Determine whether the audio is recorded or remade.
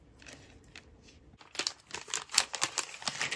recorded